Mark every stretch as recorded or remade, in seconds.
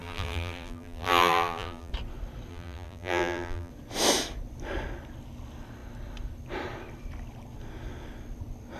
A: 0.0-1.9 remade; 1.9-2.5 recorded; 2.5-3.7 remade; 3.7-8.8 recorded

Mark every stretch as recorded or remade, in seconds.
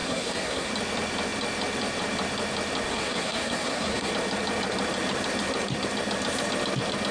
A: 0.0-0.7 remade; 0.7-2.9 recorded; 2.9-4.1 remade; 4.1-7.1 recorded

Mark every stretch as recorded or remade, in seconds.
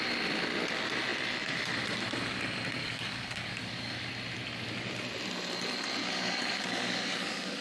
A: 0.0-2.8 recorded; 2.8-4.1 remade; 4.1-6.0 recorded; 6.0-7.6 remade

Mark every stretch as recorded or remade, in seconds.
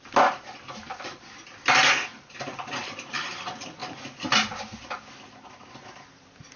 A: 0.0-2.8 recorded; 2.8-3.3 remade; 3.3-6.6 recorded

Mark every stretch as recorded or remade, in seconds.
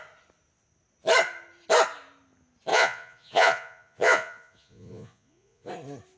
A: 0.0-2.7 recorded; 2.7-5.7 remade; 5.7-6.2 recorded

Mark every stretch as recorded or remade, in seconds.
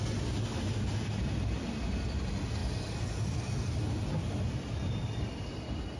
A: 0.0-6.0 recorded